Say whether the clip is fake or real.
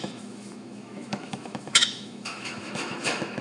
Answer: fake